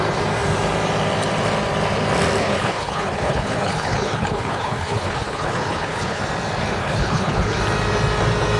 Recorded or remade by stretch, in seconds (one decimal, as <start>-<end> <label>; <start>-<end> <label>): 0.0-2.4 recorded; 2.4-6.2 remade; 6.2-6.8 recorded; 6.8-7.6 remade; 7.6-8.6 recorded